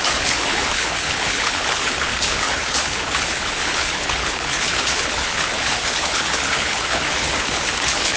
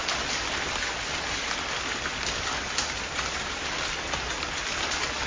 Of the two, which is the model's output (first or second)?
first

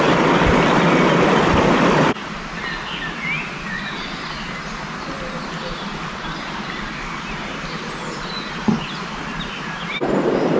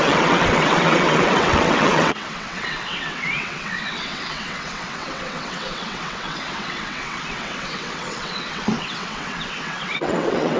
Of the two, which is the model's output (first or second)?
second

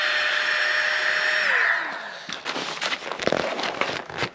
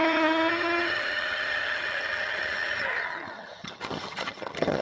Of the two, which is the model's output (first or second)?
second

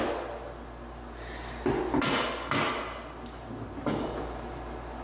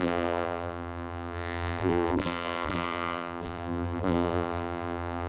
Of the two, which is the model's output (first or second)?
second